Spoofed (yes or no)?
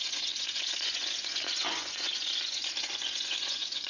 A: yes